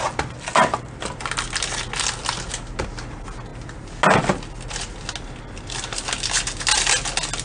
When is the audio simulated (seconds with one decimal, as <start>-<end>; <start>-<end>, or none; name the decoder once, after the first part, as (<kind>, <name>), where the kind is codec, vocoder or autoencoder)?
none